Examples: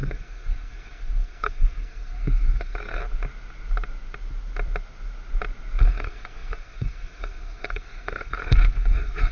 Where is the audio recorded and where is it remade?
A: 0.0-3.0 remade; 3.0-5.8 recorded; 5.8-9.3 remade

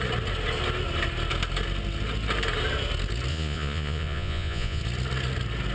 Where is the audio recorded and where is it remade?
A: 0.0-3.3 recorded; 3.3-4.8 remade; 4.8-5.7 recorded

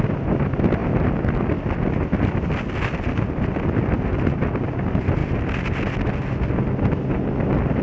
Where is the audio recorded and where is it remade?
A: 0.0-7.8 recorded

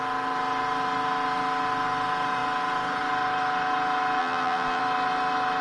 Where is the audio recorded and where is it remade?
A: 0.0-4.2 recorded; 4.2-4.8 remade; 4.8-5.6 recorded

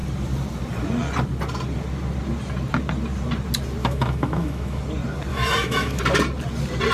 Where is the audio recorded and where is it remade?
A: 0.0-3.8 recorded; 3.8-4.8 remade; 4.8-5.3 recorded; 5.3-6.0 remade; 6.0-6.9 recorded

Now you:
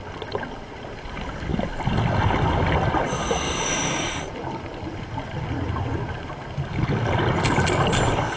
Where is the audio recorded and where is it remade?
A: 0.0-8.4 recorded

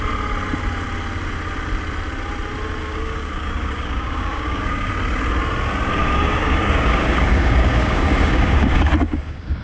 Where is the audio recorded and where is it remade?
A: 0.0-2.8 recorded; 2.8-4.9 remade; 4.9-6.0 recorded; 6.0-9.6 remade